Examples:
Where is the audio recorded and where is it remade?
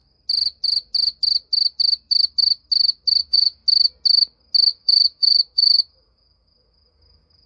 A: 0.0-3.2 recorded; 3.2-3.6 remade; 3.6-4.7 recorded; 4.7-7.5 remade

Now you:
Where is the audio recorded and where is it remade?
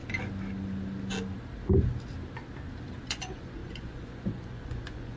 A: 0.0-3.1 recorded; 3.1-5.2 remade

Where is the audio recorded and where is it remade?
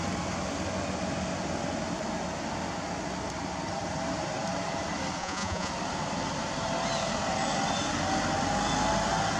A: 0.0-5.2 recorded; 5.2-5.7 remade; 5.7-9.4 recorded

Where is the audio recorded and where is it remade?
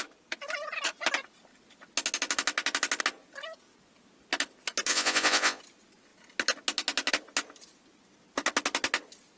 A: 0.0-4.9 recorded; 4.9-5.6 remade; 5.6-9.4 recorded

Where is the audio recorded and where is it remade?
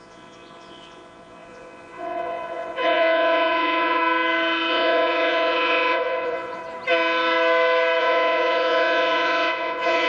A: 0.0-4.0 remade; 4.0-4.7 recorded; 4.7-6.6 remade; 6.6-8.0 recorded; 8.0-10.1 remade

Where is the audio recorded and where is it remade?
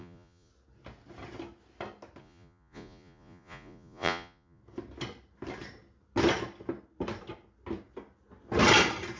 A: 0.0-0.5 remade; 0.5-2.2 recorded; 2.2-4.6 remade; 4.6-9.2 recorded